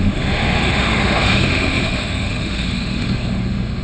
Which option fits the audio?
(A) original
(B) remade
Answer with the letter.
B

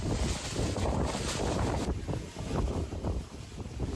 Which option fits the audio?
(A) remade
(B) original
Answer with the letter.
B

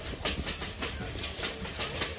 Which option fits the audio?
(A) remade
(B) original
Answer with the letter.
B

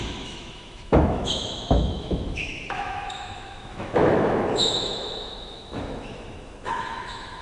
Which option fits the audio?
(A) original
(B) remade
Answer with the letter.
B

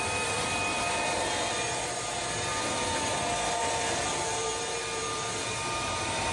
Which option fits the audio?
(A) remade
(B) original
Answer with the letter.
B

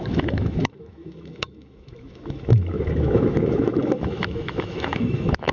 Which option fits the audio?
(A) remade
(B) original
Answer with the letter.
A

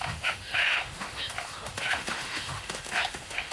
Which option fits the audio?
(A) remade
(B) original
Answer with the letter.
A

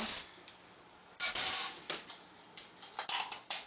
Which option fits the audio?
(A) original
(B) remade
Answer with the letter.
A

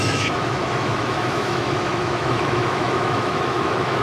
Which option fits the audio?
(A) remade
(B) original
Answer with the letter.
A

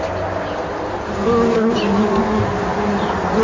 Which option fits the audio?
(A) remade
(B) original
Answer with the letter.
B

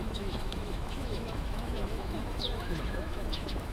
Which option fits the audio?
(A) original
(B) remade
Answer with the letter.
B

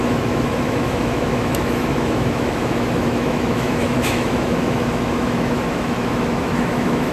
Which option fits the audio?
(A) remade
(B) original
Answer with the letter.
A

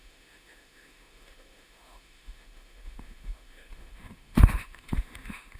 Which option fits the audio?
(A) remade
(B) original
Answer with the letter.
A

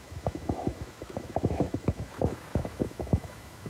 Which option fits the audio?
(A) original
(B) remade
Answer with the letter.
B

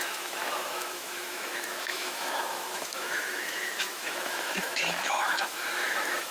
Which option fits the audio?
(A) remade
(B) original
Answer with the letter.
A